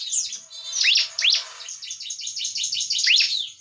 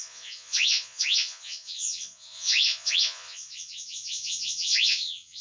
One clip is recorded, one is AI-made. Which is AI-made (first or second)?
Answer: second